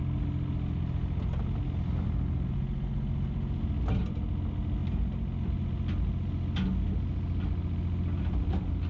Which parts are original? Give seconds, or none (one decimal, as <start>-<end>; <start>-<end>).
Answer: 0.0-8.9